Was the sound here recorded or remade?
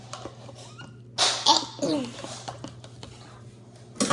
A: recorded